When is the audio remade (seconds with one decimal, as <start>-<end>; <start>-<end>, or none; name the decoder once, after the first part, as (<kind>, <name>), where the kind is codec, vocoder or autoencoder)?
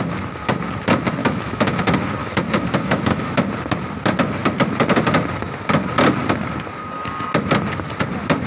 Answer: 1.2-1.8 (autoencoder, DAC-VAE); 2.2-3.3